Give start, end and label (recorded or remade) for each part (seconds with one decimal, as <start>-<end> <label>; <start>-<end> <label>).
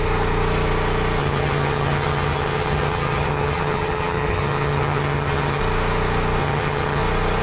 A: 0.0-1.2 recorded; 1.2-5.6 remade; 5.6-6.4 recorded; 6.4-7.0 remade; 7.0-7.4 recorded